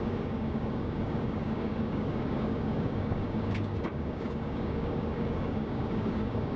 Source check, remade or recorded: remade